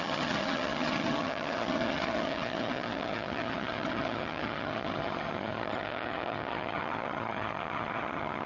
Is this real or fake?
fake